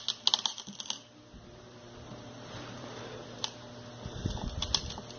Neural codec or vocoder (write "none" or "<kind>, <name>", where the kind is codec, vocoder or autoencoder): none